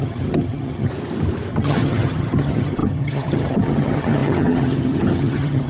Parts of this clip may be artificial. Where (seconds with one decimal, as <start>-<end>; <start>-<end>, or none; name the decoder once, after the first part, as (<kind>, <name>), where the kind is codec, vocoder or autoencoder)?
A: 0.0-0.9 (vocoder, HiFi-GAN); 1.5-5.7